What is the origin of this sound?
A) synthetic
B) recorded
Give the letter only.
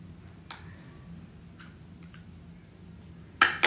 B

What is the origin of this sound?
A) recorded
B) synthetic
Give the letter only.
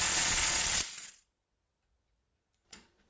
B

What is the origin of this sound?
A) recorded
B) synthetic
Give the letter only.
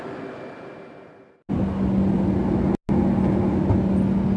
A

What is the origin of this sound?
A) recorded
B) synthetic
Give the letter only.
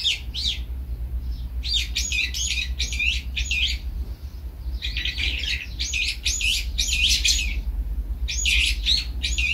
A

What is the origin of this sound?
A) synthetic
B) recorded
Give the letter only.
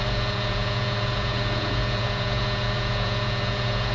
A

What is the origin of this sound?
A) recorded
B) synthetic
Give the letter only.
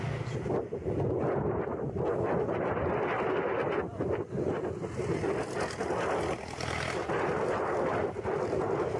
A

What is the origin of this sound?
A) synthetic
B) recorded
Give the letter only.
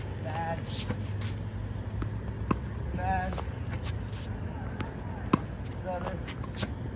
B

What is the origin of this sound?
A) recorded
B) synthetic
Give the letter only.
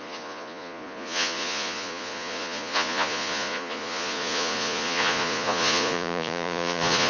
B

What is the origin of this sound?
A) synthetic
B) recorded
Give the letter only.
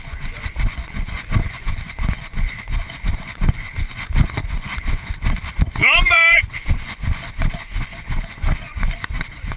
A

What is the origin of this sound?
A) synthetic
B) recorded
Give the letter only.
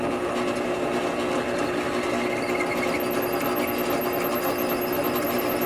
B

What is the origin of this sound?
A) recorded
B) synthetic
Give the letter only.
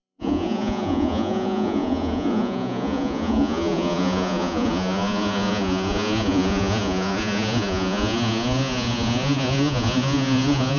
B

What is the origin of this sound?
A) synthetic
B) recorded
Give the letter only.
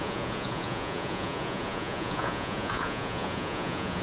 A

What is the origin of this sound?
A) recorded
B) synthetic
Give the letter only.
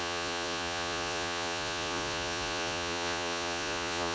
B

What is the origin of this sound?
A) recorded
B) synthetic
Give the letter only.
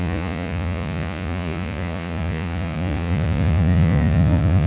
B